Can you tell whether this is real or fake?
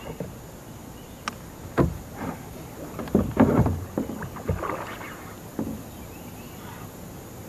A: real